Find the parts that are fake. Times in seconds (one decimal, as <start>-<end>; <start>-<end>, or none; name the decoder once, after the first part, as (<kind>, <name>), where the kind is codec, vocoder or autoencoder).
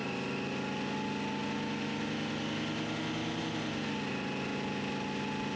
none